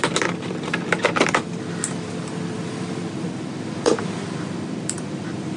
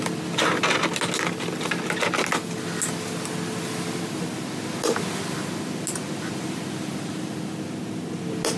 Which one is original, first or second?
second